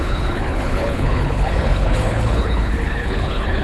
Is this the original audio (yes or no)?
no